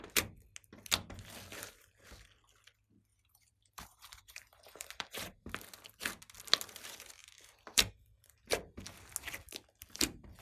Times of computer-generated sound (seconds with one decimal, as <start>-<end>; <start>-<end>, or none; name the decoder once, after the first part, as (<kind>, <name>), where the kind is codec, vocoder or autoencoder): 3.1-5.5 (vocoder, BigVGAN v2); 7.2-8.5